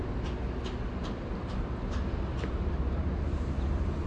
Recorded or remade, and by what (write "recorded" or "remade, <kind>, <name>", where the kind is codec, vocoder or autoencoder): recorded